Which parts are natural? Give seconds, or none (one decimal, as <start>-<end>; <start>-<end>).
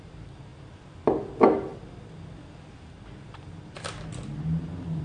0.0-5.0